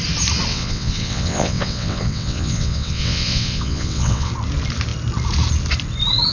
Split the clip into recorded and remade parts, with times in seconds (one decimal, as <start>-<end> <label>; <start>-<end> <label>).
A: 0.0-0.5 recorded; 0.5-4.3 remade; 4.3-6.3 recorded